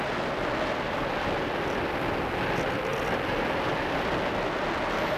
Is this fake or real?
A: real